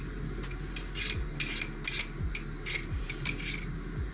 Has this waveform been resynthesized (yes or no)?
no